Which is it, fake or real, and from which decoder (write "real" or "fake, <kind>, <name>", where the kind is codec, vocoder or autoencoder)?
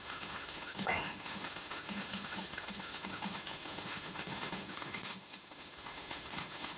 fake, autoencoder, DAC-VAE